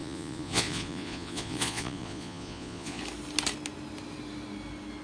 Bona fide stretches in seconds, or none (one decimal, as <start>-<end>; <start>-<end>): 3.0-5.0